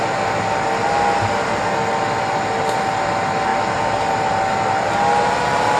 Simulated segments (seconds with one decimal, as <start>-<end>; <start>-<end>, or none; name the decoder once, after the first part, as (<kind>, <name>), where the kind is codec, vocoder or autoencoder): none

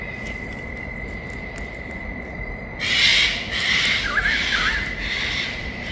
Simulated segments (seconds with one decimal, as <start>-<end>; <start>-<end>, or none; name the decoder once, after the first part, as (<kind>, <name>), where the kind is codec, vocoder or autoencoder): none

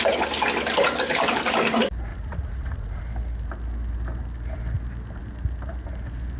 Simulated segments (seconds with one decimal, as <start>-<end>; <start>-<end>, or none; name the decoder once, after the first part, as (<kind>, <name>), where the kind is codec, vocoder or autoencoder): 2.1-3.0 (vocoder, Vocos)

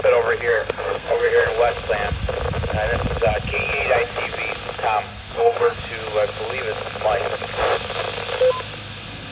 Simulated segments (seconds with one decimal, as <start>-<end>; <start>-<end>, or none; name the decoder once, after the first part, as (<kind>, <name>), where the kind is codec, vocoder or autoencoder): 0.5-1.3 (codec, SNAC); 5.1-5.8

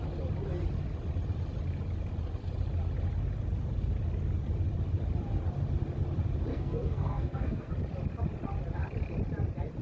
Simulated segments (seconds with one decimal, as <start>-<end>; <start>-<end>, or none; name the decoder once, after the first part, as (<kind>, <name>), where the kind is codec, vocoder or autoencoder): 6.5-7.7 (codec, SNAC)